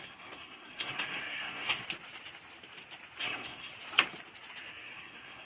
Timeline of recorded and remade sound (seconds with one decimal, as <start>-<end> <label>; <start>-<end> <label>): 0.0-1.8 remade; 1.8-3.2 recorded; 3.2-3.7 remade; 3.7-4.7 recorded; 4.7-5.5 remade